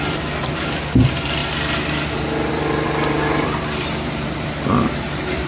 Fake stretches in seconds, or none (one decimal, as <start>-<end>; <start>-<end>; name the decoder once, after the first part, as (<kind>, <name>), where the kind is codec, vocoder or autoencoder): 0.0-1.4 (vocoder, BigVGAN v2); 2.5-5.5